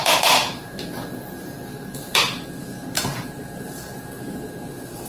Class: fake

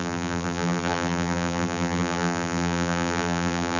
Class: fake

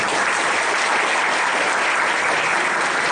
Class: real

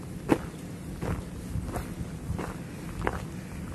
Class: real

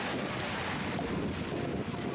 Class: real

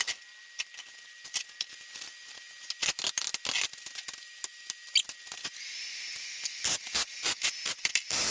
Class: real